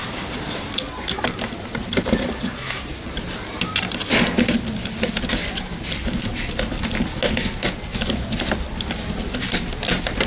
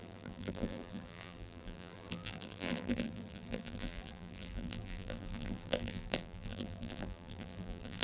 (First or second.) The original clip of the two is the first